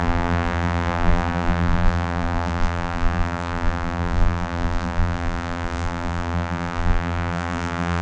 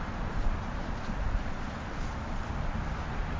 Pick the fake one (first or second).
first